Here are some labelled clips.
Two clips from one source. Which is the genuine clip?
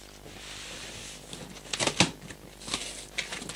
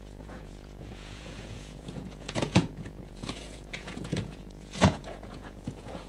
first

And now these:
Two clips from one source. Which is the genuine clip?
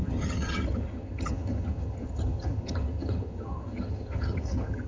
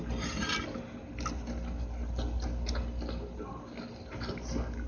second